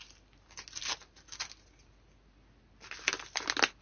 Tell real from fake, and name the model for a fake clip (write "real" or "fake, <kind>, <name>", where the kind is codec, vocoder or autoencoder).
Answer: real